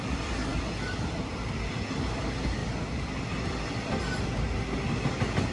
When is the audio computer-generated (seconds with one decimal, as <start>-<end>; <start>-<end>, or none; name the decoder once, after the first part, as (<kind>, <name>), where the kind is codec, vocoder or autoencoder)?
none